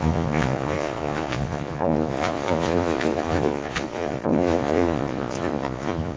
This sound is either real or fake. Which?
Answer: fake